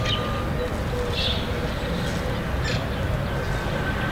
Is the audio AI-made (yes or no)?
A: no